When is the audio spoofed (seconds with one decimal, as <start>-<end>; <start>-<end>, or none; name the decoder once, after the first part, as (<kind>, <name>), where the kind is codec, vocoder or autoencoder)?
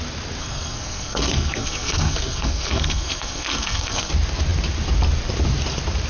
0.4-4.1 (codec, SNAC)